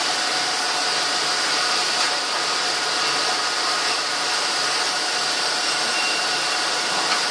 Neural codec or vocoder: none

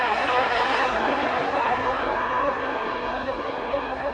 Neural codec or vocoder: codec, SNAC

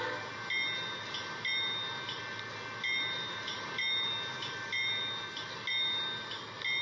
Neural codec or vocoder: none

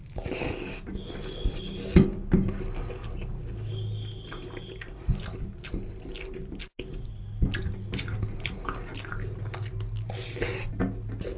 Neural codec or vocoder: none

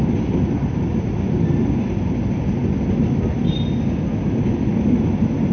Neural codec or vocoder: none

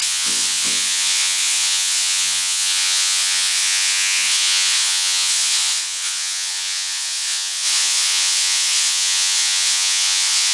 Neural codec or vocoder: vocoder, Vocos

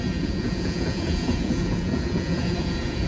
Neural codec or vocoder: vocoder, Vocos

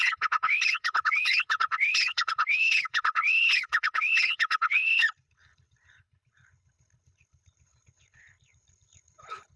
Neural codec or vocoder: codec, HILCodec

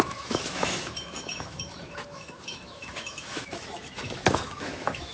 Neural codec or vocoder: autoencoder, DAC-VAE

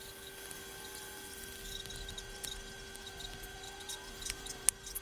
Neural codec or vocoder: none